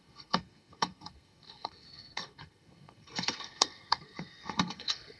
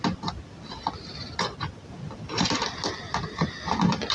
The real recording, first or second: second